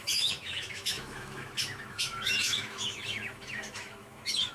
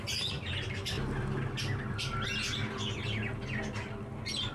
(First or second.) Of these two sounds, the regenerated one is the first